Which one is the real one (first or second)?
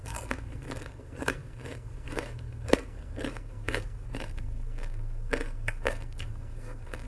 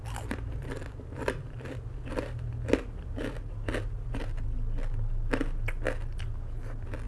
second